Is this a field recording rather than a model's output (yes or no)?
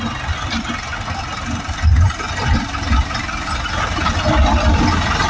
yes